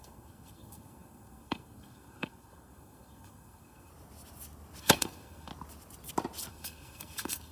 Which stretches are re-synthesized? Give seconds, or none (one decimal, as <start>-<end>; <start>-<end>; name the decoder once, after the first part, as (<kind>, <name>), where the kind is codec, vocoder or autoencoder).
0.0-3.9 (codec, SNAC); 4.8-5.5; 6.5-7.5